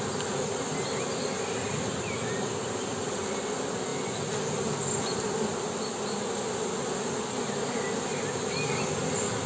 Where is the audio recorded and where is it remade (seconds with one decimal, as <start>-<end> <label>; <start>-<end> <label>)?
0.0-9.5 recorded